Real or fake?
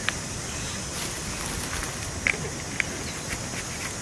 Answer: real